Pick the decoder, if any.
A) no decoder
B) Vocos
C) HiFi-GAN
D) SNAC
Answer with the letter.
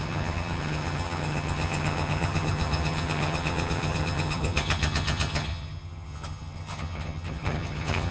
C